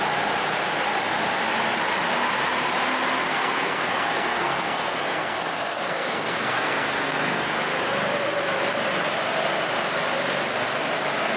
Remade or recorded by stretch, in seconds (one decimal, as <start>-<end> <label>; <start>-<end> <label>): 0.0-3.2 recorded; 3.2-7.5 remade; 7.5-11.4 recorded